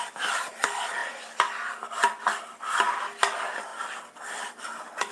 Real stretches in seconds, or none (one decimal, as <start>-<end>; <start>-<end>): 0.0-1.0; 1.9-3.7; 4.6-5.1